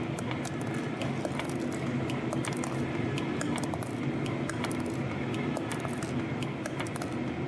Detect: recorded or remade recorded